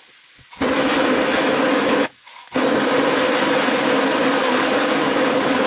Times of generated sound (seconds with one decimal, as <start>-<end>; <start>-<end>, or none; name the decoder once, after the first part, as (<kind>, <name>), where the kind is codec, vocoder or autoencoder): 1.9-2.4 (codec, DAC); 4.4-5.7